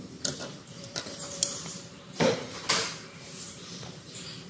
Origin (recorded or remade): remade